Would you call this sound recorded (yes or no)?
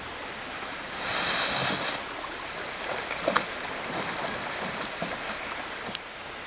yes